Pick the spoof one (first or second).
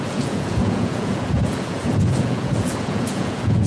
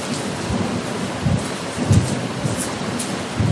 first